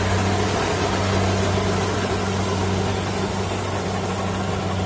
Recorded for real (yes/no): yes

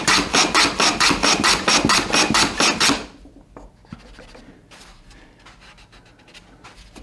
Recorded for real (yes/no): yes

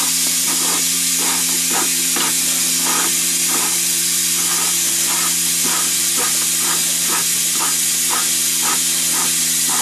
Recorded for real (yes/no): yes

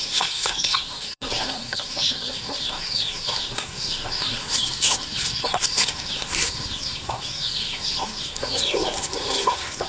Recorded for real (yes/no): no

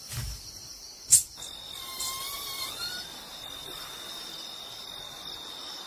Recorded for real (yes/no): yes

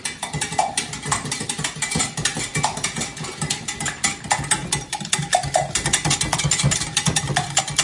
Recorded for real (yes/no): yes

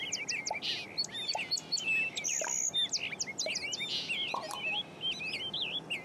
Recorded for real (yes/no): yes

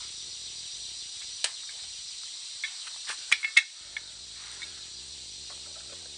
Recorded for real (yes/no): yes